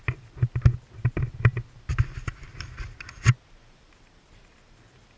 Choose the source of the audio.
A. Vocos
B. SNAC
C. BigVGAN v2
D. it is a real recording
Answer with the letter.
D